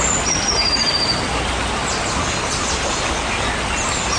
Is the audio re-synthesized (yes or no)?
no